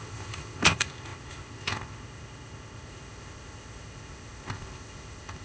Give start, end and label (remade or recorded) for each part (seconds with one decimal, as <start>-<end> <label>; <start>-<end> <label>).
0.0-5.4 remade